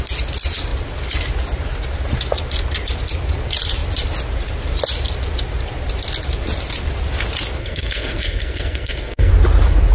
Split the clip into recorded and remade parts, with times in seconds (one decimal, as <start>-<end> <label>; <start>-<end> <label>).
0.0-7.6 recorded; 7.6-9.3 remade; 9.3-9.9 recorded

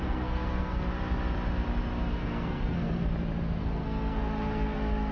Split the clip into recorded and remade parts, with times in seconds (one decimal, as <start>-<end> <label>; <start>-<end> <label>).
0.0-0.9 remade; 0.9-2.1 recorded; 2.1-3.1 remade; 3.1-3.6 recorded; 3.6-5.1 remade

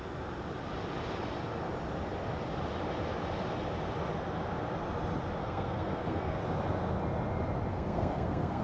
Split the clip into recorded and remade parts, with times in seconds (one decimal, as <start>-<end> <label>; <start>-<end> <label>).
0.0-5.4 recorded; 5.4-6.4 remade; 6.4-7.7 recorded; 7.7-8.6 remade

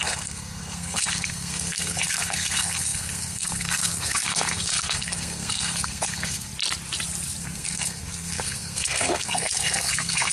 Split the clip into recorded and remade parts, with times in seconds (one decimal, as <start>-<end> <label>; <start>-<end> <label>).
0.0-6.5 remade; 6.5-7.4 recorded; 7.4-10.3 remade

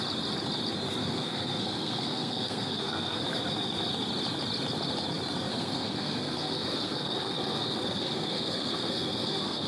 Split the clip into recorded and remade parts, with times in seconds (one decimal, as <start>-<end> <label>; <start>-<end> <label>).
0.0-1.0 recorded; 1.0-3.2 remade; 3.2-5.5 recorded; 5.5-9.7 remade